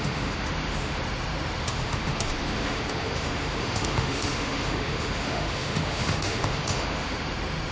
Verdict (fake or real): fake